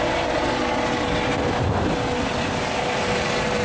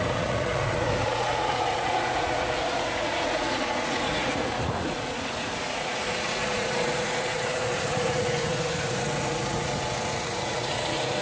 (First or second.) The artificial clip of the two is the second